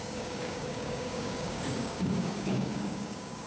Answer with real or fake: fake